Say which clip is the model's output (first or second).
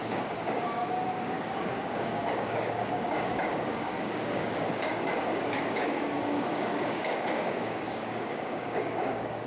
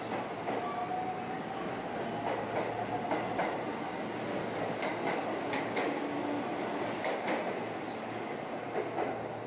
first